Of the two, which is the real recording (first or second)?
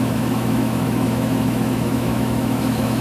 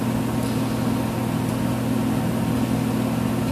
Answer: second